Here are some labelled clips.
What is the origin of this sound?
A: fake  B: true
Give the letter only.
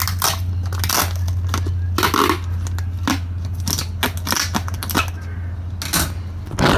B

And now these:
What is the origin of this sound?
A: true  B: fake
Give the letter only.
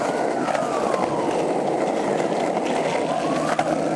A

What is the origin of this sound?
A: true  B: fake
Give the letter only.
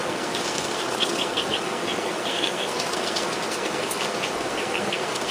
B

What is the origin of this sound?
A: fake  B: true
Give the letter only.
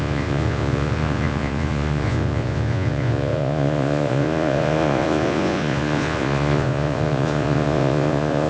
A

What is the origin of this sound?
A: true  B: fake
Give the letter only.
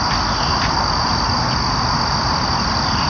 A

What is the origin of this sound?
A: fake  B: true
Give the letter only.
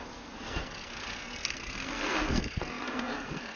A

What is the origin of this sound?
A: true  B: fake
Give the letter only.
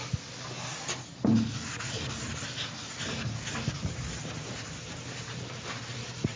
A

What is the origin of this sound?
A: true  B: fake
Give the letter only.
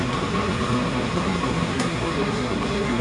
B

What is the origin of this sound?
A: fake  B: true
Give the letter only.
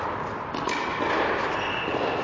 B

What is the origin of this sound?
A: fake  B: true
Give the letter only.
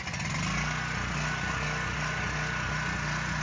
B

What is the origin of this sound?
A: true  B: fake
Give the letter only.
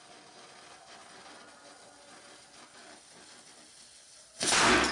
A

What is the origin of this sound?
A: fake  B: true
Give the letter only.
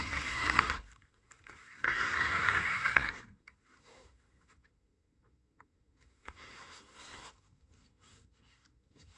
A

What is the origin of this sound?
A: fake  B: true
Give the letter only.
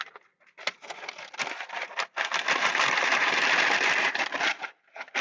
B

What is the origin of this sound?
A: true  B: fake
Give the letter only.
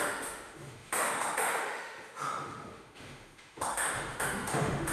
B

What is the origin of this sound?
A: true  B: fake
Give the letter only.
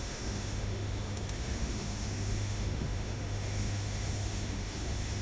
B